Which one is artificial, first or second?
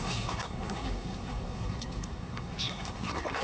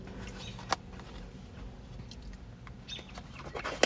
first